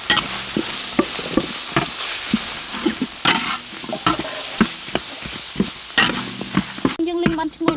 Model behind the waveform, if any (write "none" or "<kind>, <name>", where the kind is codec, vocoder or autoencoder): none